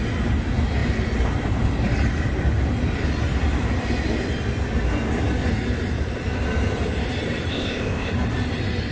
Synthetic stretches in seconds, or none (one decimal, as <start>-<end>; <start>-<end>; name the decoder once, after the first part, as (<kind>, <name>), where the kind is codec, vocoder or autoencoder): 7.5-8.1 (codec, ZipCodec)